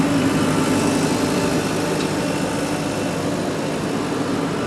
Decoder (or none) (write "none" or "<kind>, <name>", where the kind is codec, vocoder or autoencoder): none